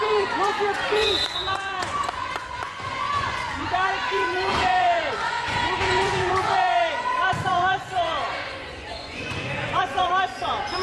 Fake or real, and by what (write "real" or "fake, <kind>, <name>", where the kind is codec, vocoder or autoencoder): fake, vocoder, Vocos